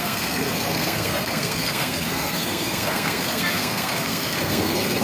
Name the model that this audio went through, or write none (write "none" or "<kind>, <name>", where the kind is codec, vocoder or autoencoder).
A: codec, SNAC